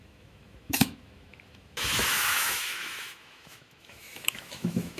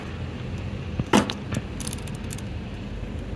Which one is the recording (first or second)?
second